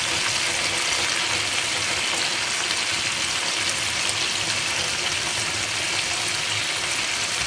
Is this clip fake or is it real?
real